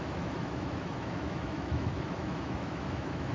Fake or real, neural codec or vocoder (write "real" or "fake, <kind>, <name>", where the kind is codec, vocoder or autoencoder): fake, autoencoder, DAC-VAE